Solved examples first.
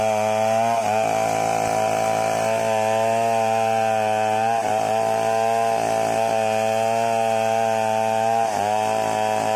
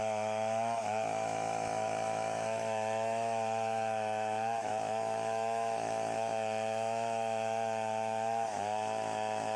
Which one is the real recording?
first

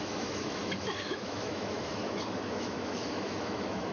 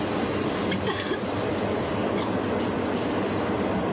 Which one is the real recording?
second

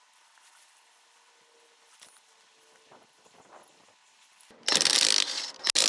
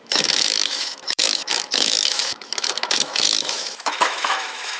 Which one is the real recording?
first